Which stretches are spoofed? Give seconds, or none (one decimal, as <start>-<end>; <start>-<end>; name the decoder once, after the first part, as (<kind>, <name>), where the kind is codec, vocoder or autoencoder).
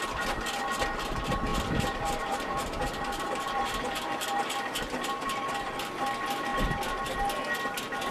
1.5-5.5 (vocoder, BigVGAN v2)